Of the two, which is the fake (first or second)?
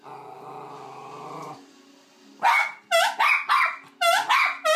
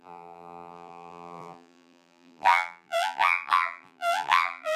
second